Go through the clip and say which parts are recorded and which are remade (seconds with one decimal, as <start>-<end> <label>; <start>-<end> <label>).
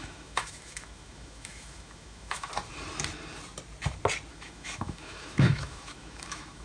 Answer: 0.0-2.5 remade; 2.5-4.3 recorded; 4.3-6.6 remade